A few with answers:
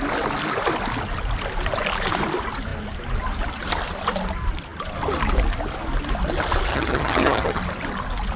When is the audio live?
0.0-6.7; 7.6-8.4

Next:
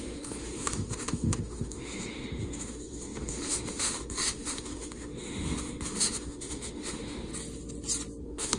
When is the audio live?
7.3-8.2